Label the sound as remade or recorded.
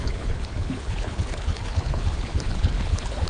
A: remade